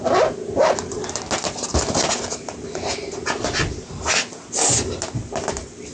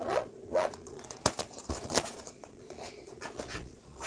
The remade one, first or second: second